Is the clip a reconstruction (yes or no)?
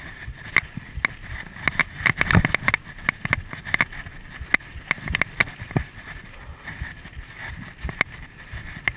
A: no